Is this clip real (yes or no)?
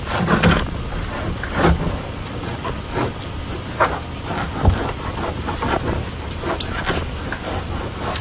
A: yes